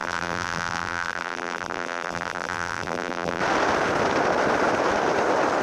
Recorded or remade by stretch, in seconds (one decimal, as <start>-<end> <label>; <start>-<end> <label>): 0.0-3.4 remade; 3.4-5.6 recorded